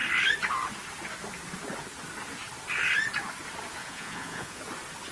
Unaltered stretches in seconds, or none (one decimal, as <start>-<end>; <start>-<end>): 0.0-3.8; 4.6-5.1